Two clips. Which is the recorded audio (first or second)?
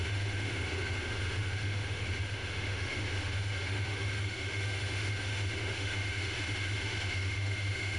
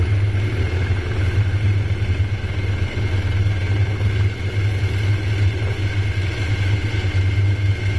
second